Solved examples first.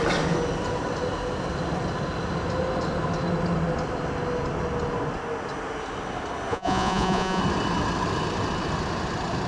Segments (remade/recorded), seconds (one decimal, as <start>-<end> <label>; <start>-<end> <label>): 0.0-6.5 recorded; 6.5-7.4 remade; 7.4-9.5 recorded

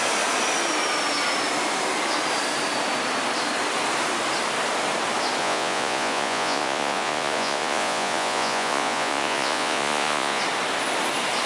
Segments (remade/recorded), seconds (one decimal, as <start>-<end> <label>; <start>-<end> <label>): 0.0-5.4 recorded; 5.4-10.4 remade; 10.4-11.5 recorded

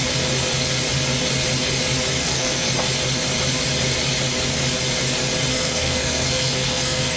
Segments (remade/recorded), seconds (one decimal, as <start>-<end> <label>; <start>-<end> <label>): 0.0-2.2 recorded; 2.2-2.7 remade; 2.7-5.5 recorded; 5.5-7.2 remade

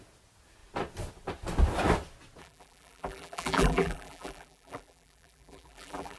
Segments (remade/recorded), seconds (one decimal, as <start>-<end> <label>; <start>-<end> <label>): 0.0-2.4 recorded; 2.4-6.2 remade

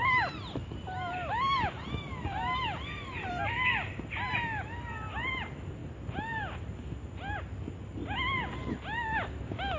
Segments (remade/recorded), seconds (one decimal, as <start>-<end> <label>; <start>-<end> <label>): 0.0-9.8 recorded

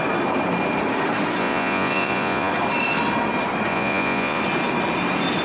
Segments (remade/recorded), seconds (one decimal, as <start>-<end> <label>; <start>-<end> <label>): 0.0-1.4 recorded; 1.4-2.5 remade; 2.5-3.7 recorded; 3.7-4.4 remade; 4.4-5.4 recorded

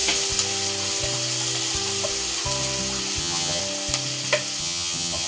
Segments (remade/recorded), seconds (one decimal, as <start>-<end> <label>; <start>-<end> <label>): 0.0-3.2 recorded; 3.2-3.6 remade; 3.6-4.6 recorded; 4.6-5.3 remade